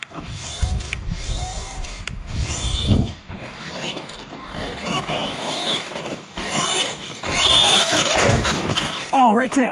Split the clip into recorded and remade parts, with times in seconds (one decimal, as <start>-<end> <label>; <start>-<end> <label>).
0.0-9.7 remade